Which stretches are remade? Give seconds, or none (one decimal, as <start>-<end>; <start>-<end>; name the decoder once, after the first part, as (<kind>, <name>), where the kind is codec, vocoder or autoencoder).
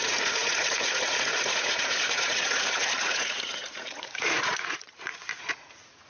0.0-6.1 (vocoder, Vocos)